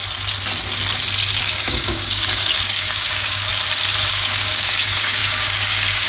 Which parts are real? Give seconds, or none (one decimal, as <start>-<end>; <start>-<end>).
0.0-1.4; 3.5-4.1